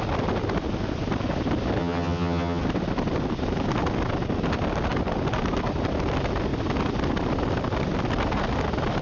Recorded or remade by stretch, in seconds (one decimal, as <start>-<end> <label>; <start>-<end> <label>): 0.0-1.8 recorded; 1.8-2.6 remade; 2.6-9.0 recorded